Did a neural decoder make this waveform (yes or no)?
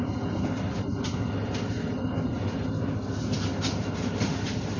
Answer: no